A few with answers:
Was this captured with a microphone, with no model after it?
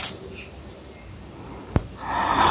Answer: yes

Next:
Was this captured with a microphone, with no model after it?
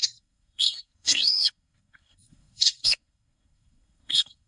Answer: no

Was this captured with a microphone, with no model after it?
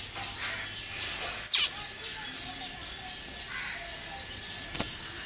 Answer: yes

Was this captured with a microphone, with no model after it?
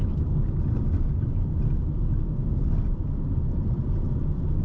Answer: yes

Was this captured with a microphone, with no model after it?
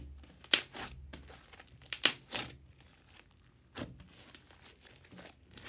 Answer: yes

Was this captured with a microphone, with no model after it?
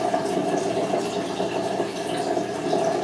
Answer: yes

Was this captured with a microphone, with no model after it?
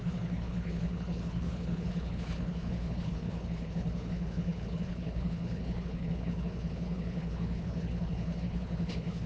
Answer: no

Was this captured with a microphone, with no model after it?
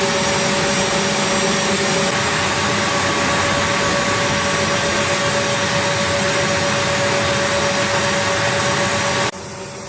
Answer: yes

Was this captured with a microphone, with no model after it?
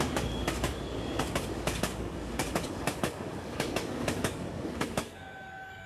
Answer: no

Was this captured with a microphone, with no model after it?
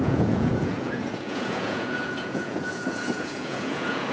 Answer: no